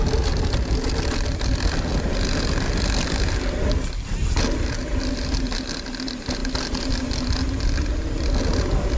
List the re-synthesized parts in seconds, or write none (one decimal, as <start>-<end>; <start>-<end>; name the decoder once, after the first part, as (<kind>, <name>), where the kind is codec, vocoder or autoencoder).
none